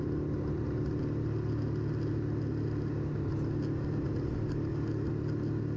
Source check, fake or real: real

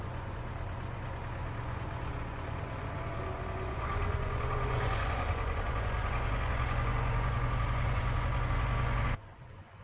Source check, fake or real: fake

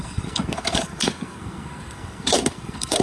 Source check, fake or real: fake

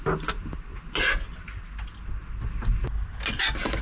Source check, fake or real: real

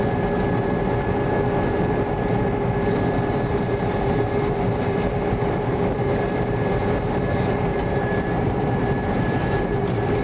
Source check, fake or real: fake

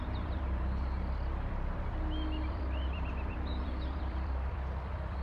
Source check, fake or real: fake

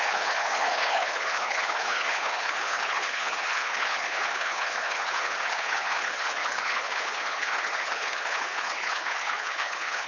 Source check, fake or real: fake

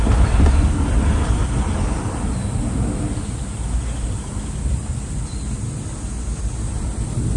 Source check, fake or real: real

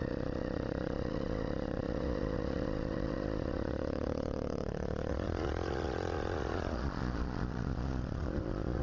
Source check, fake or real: fake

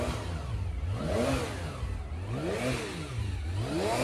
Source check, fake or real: real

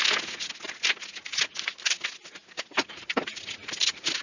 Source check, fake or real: real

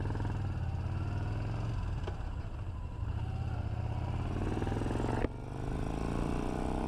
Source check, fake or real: real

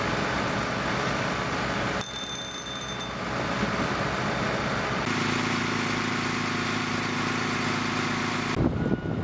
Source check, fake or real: real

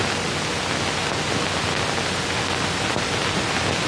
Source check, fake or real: real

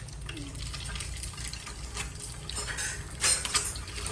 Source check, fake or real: real